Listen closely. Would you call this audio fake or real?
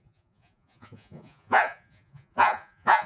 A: fake